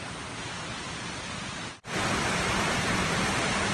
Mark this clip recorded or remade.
recorded